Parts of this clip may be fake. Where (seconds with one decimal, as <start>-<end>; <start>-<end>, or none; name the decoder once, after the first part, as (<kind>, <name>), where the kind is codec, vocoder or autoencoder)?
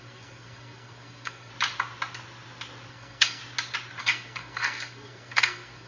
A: 0.0-1.5 (codec, SNAC); 2.9-3.4; 4.0-5.9